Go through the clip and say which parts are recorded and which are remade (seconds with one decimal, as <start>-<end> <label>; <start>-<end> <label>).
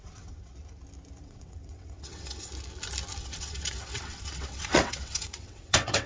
0.0-0.5 remade; 0.5-1.2 recorded; 1.2-2.5 remade; 2.5-3.2 recorded; 3.2-6.1 remade